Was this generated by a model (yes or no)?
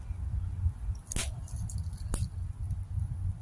no